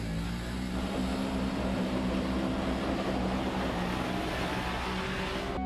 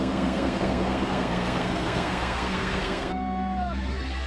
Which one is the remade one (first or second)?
second